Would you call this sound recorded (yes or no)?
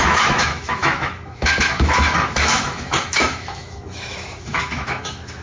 no